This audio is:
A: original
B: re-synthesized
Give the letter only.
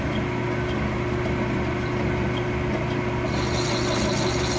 A